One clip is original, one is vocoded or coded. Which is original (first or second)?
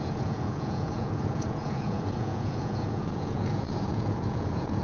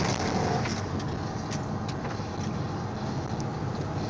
second